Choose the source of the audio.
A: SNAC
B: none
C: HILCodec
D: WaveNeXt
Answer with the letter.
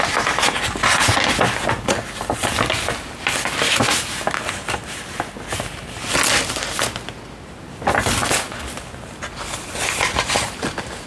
B